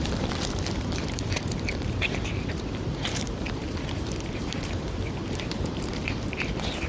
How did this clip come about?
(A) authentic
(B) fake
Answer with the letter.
B